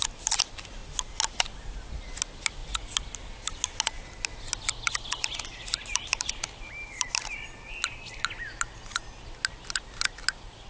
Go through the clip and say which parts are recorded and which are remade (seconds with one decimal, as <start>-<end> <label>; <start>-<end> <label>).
0.0-10.7 recorded